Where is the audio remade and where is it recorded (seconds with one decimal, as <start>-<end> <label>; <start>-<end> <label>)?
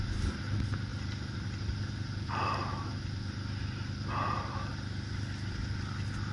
0.0-6.3 recorded